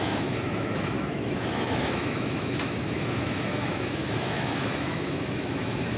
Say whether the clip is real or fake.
fake